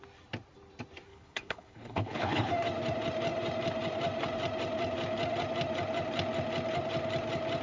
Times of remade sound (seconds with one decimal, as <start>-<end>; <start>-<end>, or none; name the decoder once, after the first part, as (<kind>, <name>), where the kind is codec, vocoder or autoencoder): 1.1-2.5 (codec, HILCodec)